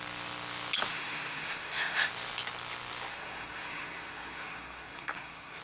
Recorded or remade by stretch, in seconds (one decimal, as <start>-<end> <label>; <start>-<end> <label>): 0.0-0.9 recorded; 0.9-2.1 remade; 2.1-3.1 recorded; 3.1-5.6 remade

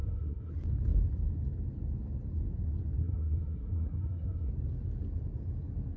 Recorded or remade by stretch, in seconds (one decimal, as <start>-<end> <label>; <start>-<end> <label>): 0.0-0.5 remade; 0.5-3.0 recorded; 3.0-4.5 remade; 4.5-6.0 recorded

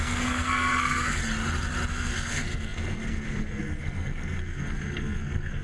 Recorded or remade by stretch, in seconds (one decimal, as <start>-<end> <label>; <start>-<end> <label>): 0.0-1.2 remade; 1.2-1.9 recorded; 1.9-5.6 remade

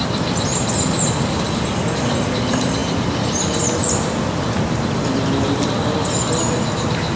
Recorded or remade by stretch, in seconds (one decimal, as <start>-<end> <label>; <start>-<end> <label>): 0.0-7.2 recorded

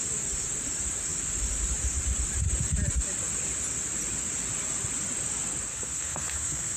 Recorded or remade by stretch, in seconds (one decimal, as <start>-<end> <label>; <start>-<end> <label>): 0.0-5.7 recorded; 5.7-6.8 remade

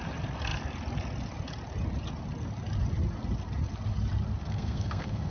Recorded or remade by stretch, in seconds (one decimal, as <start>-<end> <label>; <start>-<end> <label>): 0.0-4.4 recorded; 4.4-5.3 remade

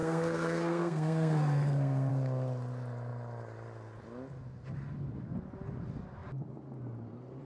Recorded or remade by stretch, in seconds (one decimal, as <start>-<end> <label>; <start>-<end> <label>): 0.0-2.1 remade; 2.1-7.4 recorded